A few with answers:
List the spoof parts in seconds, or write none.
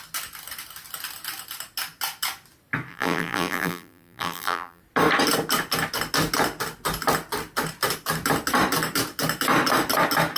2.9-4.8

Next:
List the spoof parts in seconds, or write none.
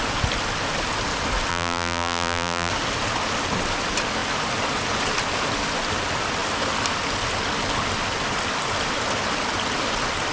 1.5-2.7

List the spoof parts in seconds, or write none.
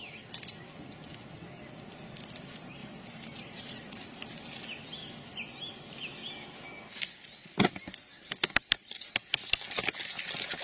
2.8-4.5; 5.0-5.7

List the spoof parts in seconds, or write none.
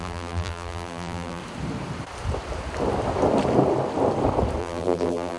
0.0-1.4; 4.6-5.4